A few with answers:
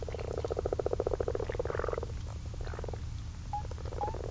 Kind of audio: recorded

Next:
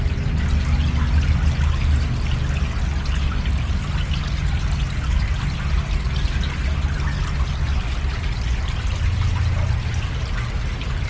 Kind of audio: recorded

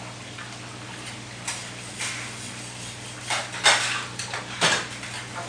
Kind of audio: recorded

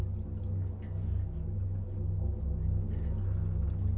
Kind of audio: recorded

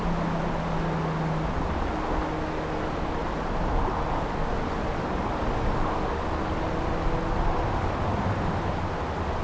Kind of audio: recorded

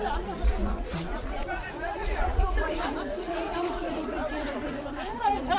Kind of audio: remade